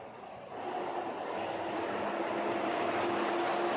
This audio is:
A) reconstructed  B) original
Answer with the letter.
B